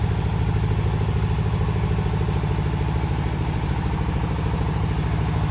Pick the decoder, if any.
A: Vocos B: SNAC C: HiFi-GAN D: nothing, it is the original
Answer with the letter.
D